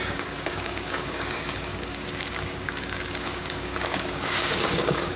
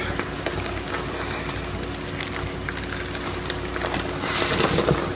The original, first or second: second